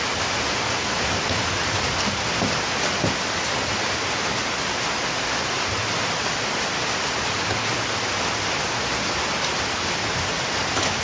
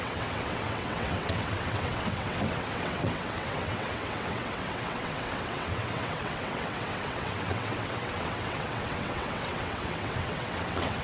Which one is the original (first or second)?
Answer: first